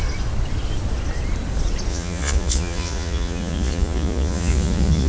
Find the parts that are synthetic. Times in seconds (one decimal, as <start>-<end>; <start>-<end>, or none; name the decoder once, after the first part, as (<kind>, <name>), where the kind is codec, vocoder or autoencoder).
1.9-5.1 (vocoder, Vocos)